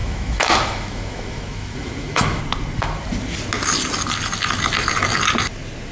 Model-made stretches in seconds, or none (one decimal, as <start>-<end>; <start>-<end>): 0.0-2.4